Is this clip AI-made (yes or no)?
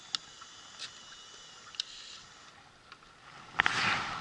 no